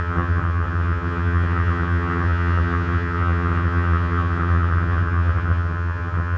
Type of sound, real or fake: fake